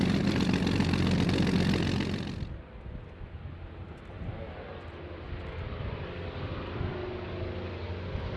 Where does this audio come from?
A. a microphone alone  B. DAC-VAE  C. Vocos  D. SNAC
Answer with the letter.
A